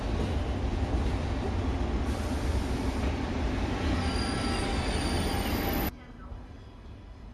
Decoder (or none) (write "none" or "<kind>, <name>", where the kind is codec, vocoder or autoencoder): none